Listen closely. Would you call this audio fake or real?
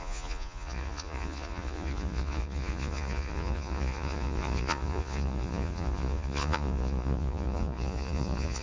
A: fake